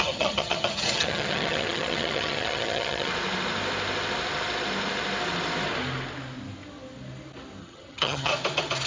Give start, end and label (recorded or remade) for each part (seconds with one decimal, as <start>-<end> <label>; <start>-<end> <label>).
0.0-3.1 remade; 3.1-7.6 recorded; 7.6-8.3 remade; 8.3-8.9 recorded